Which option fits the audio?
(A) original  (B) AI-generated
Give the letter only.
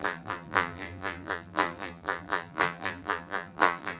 B